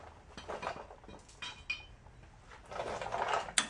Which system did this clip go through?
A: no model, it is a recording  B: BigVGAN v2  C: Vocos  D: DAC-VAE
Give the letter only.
A